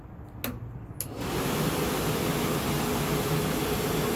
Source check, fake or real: real